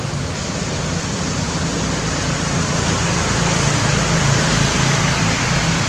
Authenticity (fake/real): fake